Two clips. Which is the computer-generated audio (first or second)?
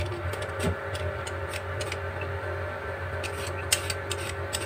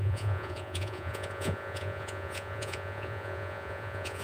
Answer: second